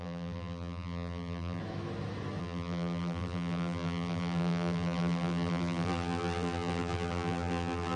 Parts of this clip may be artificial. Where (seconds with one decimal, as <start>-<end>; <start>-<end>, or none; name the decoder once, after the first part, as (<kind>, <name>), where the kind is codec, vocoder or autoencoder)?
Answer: 0.0-1.6 (vocoder, BigVGAN v2); 2.4-8.0